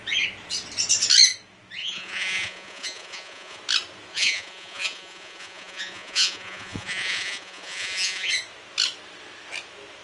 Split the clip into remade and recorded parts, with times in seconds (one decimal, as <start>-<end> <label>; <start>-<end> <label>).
0.0-1.8 recorded; 1.8-3.6 remade; 3.6-4.1 recorded; 4.1-8.3 remade; 8.3-10.0 recorded